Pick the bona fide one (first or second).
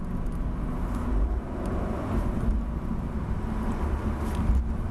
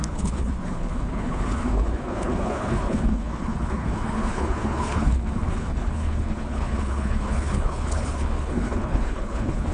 first